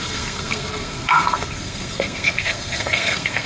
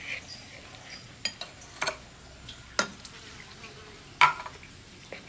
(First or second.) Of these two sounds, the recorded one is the second